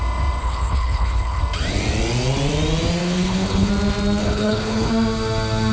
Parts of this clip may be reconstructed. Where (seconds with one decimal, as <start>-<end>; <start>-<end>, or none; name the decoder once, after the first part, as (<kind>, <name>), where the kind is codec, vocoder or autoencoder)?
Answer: 0.4-1.4 (codec, HILCodec); 3.0-3.7; 4.2-4.9

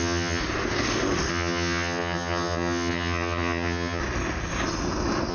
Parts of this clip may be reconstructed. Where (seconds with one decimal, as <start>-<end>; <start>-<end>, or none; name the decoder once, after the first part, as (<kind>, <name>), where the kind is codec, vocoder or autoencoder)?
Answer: 0.0-0.4 (vocoder, HiFi-GAN); 1.3-4.0

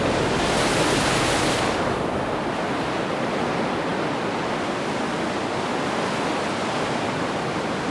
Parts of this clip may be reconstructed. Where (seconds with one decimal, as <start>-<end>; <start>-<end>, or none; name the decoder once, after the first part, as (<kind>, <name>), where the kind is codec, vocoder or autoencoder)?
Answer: none

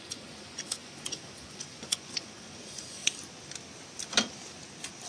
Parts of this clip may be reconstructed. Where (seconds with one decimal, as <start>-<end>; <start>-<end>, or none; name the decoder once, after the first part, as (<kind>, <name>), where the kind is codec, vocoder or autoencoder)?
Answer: 0.0-3.0 (vocoder, Vocos)